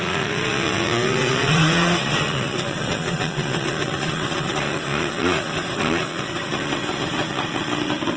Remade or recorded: remade